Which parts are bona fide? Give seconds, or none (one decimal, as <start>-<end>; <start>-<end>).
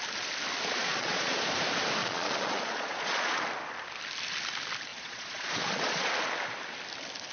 0.0-0.8; 1.4-2.0; 3.4-4.9; 6.1-7.3